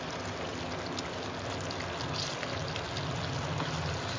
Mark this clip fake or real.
real